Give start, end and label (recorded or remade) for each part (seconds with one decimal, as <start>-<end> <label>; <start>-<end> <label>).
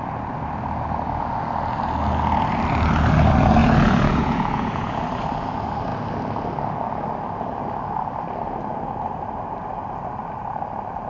0.0-3.6 recorded; 3.6-5.0 remade; 5.0-11.1 recorded